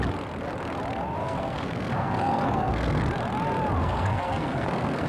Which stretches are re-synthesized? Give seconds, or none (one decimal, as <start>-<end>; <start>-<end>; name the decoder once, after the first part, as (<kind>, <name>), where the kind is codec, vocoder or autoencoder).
1.2-3.0 (codec, SNAC); 3.8-5.1